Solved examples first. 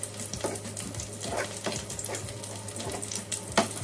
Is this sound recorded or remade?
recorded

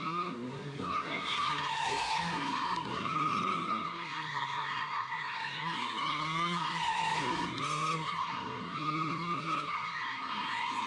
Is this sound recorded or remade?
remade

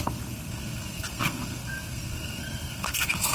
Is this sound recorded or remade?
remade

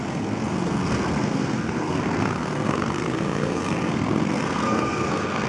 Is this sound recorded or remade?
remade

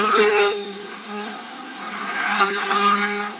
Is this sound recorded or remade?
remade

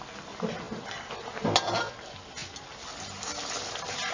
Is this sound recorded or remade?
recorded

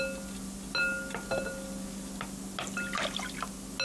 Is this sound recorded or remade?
recorded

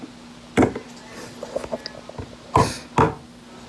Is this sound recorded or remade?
recorded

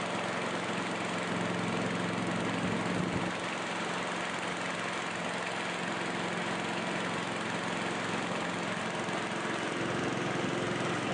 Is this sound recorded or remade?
recorded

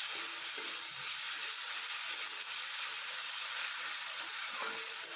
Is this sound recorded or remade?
recorded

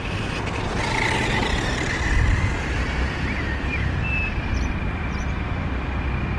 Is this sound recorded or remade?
recorded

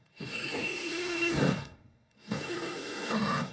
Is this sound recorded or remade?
remade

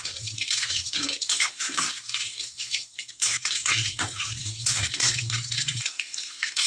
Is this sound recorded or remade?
remade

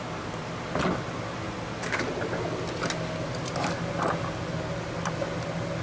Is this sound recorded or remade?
recorded